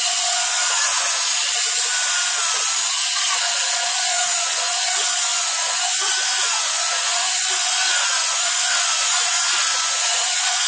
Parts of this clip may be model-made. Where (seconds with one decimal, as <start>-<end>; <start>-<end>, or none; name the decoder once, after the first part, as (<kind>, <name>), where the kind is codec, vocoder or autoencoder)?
0.0-1.3 (vocoder, Vocos); 4.0-10.7